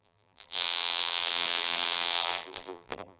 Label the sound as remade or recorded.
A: remade